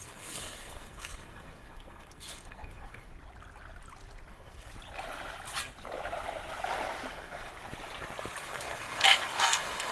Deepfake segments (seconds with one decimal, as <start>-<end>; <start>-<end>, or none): 0.0-3.1; 4.3-4.7; 7.1-7.5; 8.4-9.9